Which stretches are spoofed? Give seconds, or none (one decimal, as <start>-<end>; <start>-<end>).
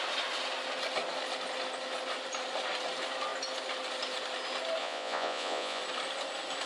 4.8-5.8